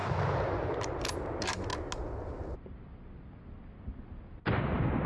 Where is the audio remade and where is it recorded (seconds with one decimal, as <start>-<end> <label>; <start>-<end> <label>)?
0.0-5.1 recorded